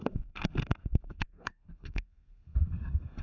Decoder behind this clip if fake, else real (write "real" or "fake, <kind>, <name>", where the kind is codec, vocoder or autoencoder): fake, codec, SNAC